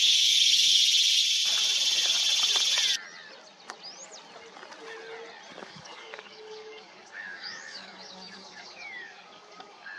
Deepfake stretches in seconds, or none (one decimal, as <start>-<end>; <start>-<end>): 0.0-0.8; 5.6-10.0